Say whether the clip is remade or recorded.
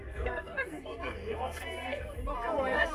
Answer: remade